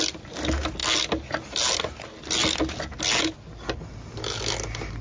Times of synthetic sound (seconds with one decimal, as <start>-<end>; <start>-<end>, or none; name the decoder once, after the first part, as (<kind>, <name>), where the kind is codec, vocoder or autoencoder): none